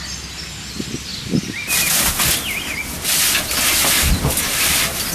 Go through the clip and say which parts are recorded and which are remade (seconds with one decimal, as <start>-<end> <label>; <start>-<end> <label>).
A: 0.0-5.1 recorded